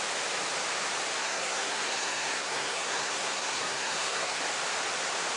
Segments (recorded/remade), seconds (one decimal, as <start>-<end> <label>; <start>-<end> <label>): 0.0-1.2 recorded; 1.2-4.4 remade; 4.4-5.4 recorded